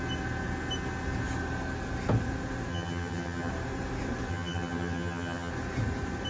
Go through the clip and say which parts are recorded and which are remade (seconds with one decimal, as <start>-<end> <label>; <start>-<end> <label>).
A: 0.0-2.7 recorded; 2.7-3.5 remade; 3.5-4.3 recorded; 4.3-5.5 remade; 5.5-6.3 recorded